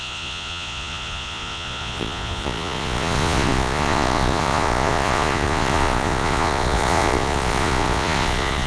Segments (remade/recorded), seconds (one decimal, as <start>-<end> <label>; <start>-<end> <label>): 0.0-8.7 remade